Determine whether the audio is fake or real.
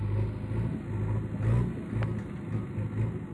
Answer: real